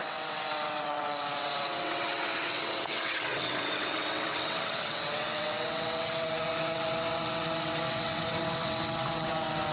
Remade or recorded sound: remade